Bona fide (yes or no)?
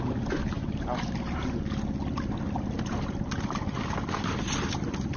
yes